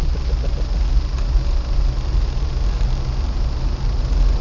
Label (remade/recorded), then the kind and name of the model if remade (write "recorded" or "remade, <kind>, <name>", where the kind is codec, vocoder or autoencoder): recorded